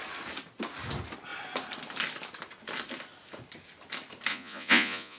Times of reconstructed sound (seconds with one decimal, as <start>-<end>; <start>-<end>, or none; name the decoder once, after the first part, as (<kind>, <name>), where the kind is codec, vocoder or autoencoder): 4.3-5.2 (vocoder, Vocos)